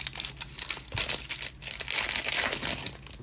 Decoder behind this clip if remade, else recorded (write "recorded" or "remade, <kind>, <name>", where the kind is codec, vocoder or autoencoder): recorded